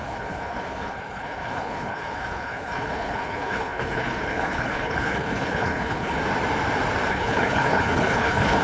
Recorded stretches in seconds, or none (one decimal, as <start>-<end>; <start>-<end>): 6.2-7.1